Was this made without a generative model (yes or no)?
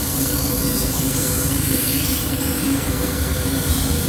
no